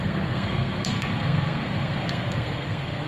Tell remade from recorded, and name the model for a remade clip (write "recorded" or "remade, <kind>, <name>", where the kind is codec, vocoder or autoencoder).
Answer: remade, codec, SNAC